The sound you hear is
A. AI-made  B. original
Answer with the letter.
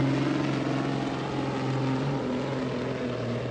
B